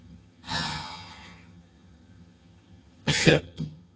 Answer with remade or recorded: remade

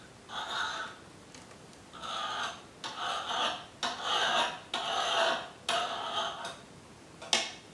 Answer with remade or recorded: recorded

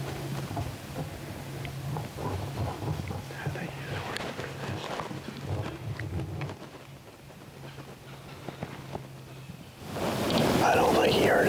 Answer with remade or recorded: recorded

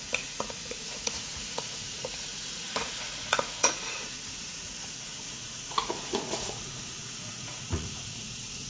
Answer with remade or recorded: remade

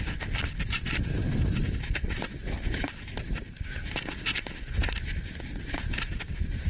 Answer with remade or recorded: recorded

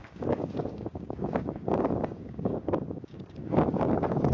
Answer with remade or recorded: remade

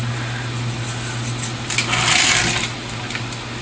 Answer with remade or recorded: recorded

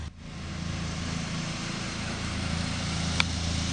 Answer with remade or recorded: remade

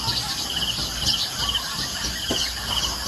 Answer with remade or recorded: recorded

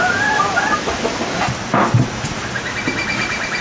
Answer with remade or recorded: recorded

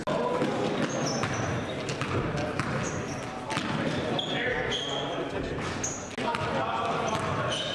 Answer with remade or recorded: recorded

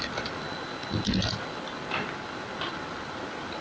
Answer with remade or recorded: recorded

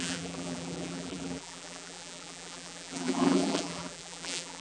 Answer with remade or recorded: remade